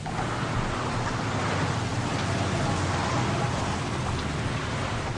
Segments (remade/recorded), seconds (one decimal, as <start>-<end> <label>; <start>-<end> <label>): 0.0-5.2 recorded